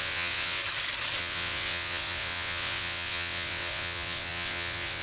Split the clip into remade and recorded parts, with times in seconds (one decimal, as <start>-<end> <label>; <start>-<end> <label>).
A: 0.0-0.6 remade; 0.6-1.2 recorded; 1.2-5.0 remade